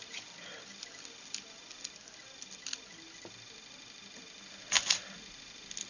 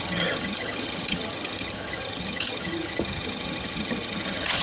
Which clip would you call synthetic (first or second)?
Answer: second